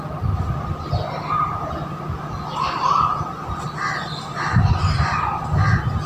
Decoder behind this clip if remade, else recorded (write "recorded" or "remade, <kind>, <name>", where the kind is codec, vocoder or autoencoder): recorded